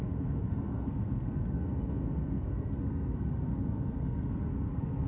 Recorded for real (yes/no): no